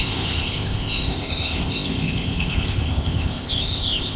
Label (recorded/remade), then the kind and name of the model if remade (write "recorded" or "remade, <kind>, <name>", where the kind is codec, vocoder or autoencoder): remade, codec, ZipCodec